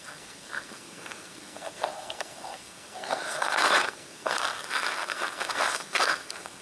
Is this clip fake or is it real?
fake